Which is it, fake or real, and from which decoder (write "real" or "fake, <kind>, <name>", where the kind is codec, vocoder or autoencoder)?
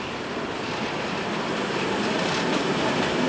real